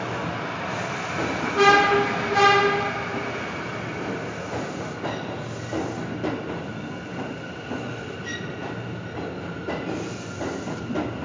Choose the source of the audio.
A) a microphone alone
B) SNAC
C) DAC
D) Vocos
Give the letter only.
A